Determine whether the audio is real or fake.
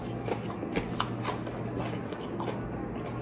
real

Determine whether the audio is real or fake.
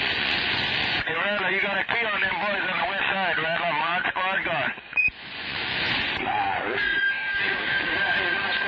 fake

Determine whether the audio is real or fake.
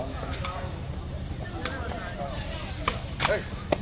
real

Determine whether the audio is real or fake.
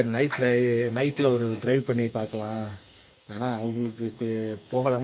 fake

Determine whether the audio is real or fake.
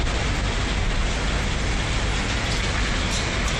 real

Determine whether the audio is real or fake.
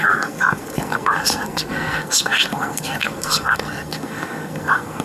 fake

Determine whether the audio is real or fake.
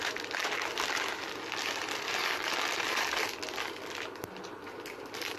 real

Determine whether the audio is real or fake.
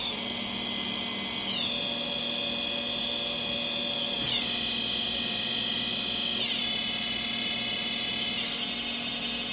real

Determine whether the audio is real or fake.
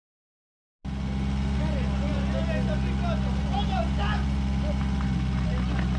real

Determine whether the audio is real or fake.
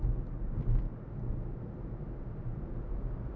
real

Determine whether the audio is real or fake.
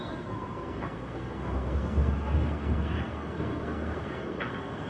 fake